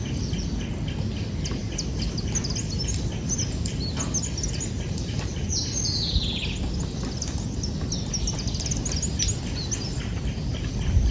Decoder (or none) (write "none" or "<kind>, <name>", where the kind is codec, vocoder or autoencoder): none